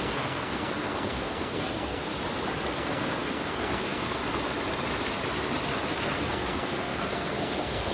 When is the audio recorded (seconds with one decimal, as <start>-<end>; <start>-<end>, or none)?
2.1-2.7; 4.2-6.0